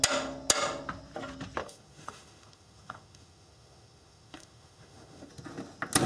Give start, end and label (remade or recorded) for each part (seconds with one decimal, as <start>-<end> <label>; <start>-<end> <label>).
0.0-1.6 recorded; 1.6-5.3 remade; 5.3-6.1 recorded